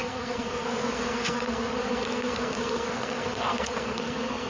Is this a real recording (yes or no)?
no